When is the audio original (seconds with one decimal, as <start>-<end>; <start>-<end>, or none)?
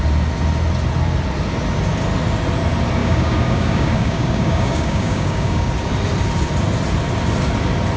0.0-3.0; 5.7-8.0